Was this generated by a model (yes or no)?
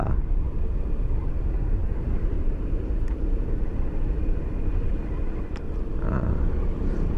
yes